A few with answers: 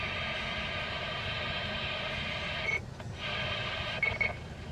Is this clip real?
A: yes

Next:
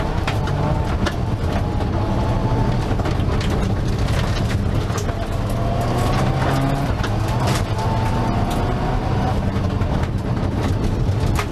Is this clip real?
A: yes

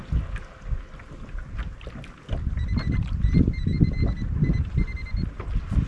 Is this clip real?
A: yes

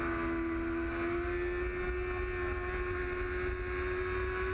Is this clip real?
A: yes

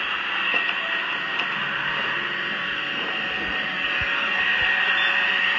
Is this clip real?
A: yes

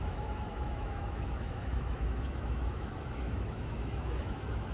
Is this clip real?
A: no